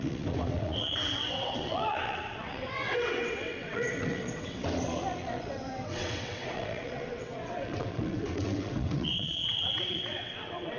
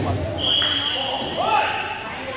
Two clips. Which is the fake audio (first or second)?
first